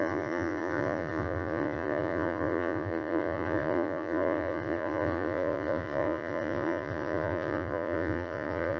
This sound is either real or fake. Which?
fake